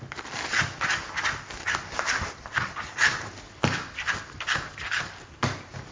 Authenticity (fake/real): real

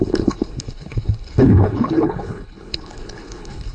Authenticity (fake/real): fake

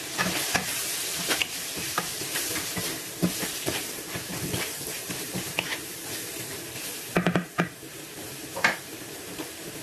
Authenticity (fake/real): fake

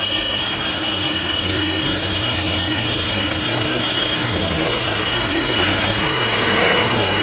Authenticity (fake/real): fake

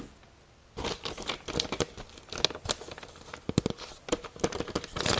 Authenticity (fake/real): real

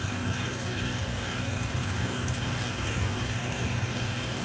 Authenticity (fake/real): fake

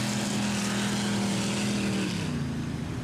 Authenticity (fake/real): real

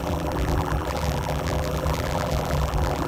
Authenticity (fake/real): fake